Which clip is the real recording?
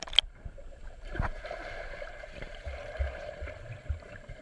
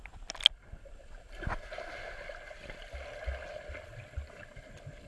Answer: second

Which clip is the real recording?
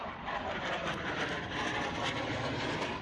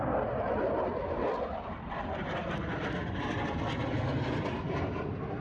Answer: second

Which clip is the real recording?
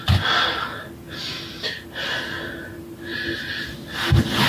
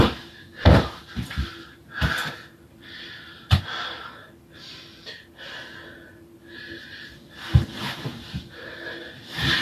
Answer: first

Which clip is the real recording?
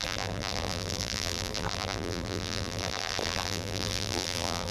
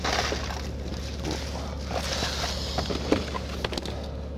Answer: second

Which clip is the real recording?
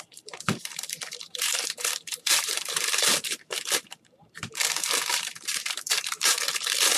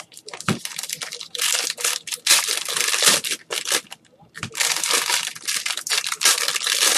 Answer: second